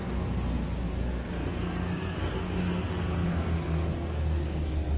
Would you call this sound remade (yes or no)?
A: yes